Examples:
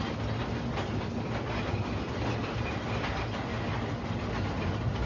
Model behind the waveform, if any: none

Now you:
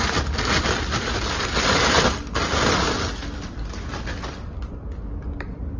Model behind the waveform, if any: none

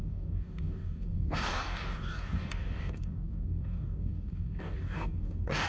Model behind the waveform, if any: codec, DAC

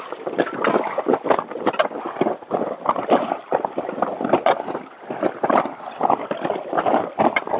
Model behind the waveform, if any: none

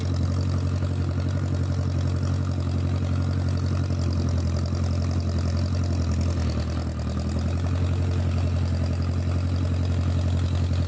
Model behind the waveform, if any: none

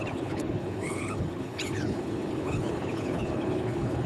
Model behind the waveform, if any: codec, HILCodec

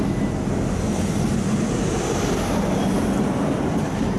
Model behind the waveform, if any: none